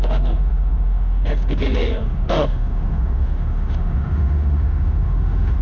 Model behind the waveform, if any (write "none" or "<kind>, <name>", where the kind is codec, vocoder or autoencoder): autoencoder, DAC-VAE